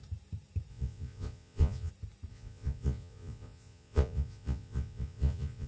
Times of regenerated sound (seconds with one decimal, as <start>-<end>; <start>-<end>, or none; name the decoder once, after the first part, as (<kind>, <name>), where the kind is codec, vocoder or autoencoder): 0.7-1.9 (vocoder, Vocos); 2.3-5.7